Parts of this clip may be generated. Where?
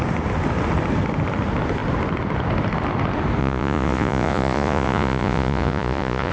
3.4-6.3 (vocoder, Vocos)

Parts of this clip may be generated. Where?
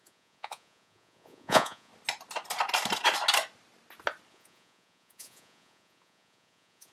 0.0-1.9 (vocoder, Vocos); 4.3-6.9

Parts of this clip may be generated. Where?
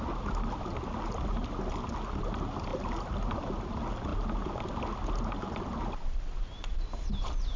none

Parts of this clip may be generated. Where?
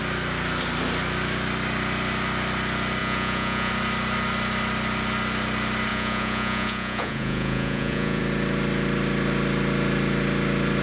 3.0-3.7 (vocoder, Vocos); 5.9-8.2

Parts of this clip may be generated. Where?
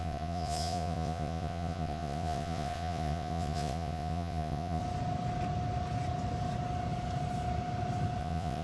0.0-4.8 (vocoder, Vocos); 8.2-8.6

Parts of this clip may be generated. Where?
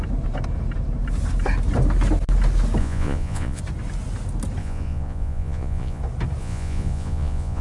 2.8-3.6 (vocoder, Vocos); 4.6-6.0; 6.4-7.6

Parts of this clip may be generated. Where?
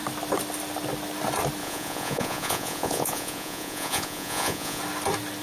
1.6-4.8 (vocoder, Vocos)